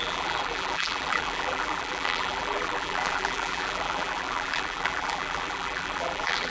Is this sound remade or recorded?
remade